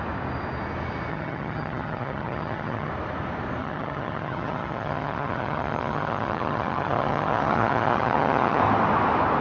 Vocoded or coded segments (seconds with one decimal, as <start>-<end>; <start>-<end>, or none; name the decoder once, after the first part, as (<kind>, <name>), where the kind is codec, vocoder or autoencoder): 1.1-2.9 (vocoder, HiFi-GAN); 3.6-8.6